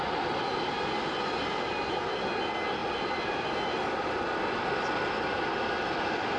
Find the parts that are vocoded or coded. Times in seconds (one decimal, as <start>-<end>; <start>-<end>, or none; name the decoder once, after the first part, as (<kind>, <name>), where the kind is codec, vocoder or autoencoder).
2.8-5.4 (vocoder, BigVGAN v2)